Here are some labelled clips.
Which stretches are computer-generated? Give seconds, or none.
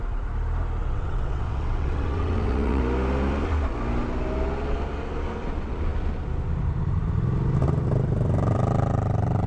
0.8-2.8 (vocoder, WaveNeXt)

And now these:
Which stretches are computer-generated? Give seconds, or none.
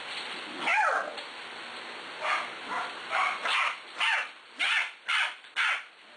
none